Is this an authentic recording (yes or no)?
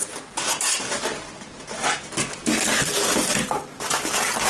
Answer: yes